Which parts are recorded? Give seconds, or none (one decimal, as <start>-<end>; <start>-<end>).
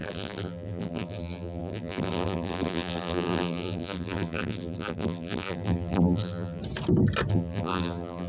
6.6-7.3